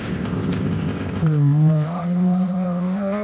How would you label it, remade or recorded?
remade